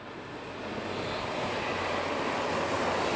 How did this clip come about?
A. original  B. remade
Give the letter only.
A